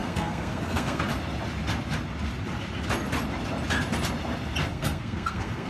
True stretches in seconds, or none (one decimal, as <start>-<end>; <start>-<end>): 1.0-4.7